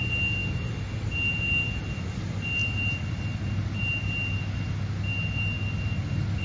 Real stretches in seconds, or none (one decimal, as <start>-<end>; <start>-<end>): 0.0-6.4

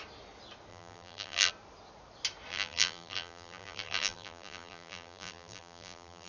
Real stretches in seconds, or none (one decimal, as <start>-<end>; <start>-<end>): 0.0-0.7; 1.5-2.5

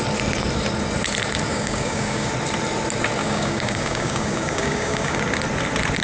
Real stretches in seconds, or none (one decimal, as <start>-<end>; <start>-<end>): 0.0-1.5; 2.3-3.2; 5.2-6.0

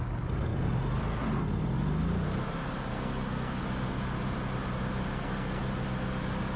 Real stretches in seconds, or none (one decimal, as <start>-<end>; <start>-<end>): 0.0-2.9; 3.6-5.1; 5.6-6.6

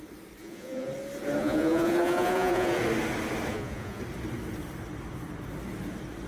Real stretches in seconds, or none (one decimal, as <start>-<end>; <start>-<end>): 0.0-0.4; 0.9-1.4; 2.8-3.5; 4.0-6.3

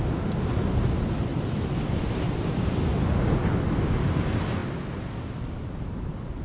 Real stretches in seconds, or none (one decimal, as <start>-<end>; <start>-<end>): 0.0-1.3; 2.8-6.4